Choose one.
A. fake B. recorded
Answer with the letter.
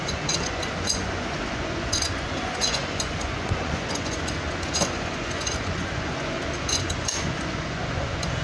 A